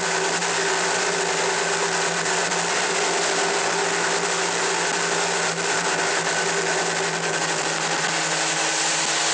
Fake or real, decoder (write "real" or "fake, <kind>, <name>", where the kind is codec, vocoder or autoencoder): real